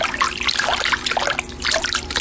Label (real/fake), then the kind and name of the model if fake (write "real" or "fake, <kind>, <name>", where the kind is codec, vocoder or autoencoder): real